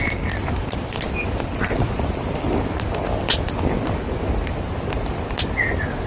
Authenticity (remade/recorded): recorded